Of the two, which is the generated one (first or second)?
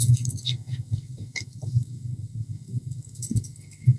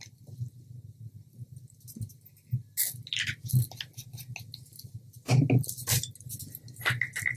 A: first